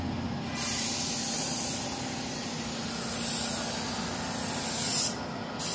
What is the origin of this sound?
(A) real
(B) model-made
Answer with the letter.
A